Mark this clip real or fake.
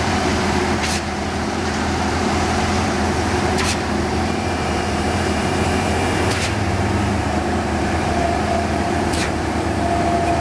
fake